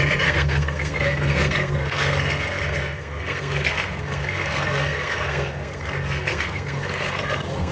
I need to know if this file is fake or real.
fake